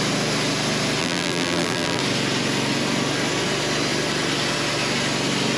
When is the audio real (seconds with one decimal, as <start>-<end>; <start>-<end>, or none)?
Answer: 0.0-1.0; 2.0-5.6